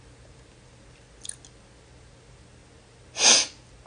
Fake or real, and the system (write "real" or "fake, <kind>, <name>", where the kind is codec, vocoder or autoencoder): real